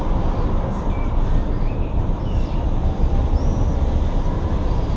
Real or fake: real